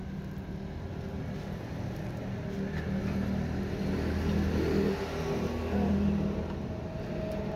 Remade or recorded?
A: recorded